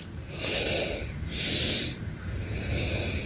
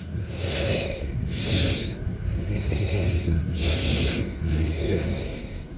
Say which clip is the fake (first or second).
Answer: second